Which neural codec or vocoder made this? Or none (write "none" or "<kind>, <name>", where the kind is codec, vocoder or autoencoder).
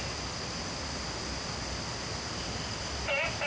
none